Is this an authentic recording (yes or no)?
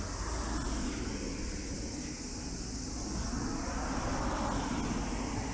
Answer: yes